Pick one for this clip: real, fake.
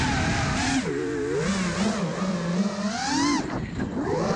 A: real